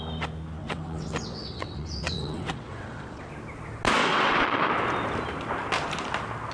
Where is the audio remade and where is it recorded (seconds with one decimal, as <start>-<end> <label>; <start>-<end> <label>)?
0.0-0.6 recorded; 0.6-3.3 remade; 3.3-4.0 recorded; 4.0-4.7 remade; 4.7-6.5 recorded

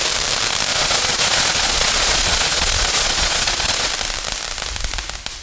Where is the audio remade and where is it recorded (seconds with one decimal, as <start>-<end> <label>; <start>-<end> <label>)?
0.0-0.7 recorded; 0.7-3.9 remade; 3.9-5.4 recorded

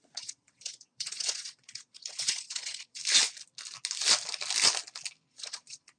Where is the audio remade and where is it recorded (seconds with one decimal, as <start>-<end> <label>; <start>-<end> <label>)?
0.0-3.0 remade; 3.0-5.3 recorded; 5.3-6.0 remade

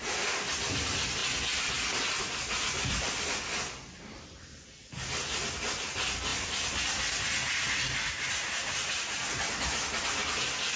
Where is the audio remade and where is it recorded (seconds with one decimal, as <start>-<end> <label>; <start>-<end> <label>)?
0.0-10.8 recorded

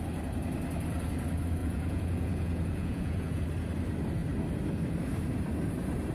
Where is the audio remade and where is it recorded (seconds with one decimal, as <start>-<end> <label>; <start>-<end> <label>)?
0.0-1.6 recorded; 1.6-3.4 remade; 3.4-6.1 recorded

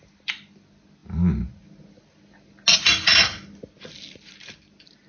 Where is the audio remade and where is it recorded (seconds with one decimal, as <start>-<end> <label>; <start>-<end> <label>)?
0.0-5.1 recorded

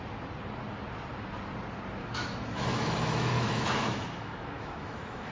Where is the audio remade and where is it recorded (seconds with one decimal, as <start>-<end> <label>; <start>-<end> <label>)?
0.0-2.0 recorded; 2.0-5.3 remade